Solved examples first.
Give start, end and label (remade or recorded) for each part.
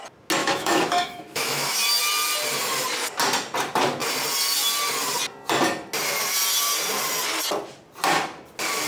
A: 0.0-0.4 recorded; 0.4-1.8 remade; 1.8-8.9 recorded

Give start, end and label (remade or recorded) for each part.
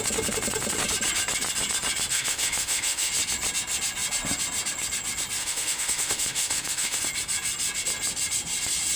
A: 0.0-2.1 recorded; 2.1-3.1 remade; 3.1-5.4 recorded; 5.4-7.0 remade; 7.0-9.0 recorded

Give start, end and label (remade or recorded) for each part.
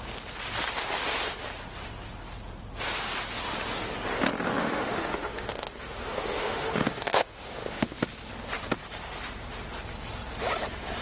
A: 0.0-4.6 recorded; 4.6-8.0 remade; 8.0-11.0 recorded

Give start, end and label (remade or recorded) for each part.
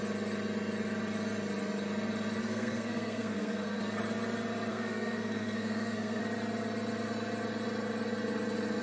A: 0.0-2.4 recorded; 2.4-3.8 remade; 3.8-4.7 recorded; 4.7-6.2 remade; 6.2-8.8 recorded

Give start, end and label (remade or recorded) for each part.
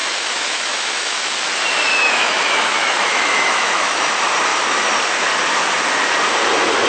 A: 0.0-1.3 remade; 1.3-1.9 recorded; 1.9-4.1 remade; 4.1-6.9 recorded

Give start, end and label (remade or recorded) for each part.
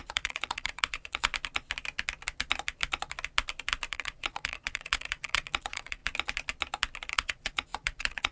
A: 0.0-1.3 remade; 1.3-3.9 recorded; 3.9-6.0 remade; 6.0-7.1 recorded; 7.1-8.3 remade